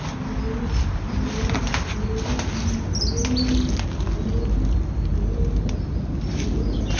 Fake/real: real